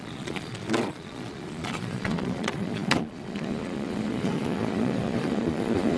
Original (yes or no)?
no